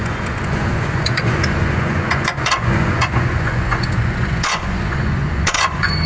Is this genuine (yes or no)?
no